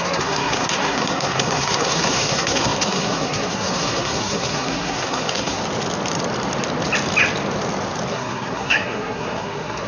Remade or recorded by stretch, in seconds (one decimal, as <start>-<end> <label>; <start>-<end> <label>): 0.0-5.6 remade; 5.6-8.1 recorded; 8.1-9.9 remade